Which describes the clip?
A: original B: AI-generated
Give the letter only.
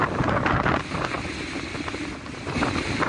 A